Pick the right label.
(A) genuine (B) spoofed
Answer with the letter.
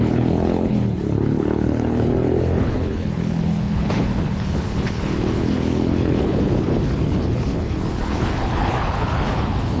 B